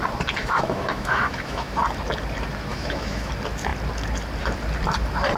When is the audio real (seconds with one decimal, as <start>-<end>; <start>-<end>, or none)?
0.0-0.4; 1.8-2.7; 3.3-5.4